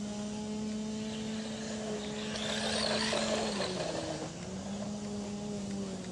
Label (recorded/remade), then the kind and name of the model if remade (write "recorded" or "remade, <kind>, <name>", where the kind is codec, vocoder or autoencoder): recorded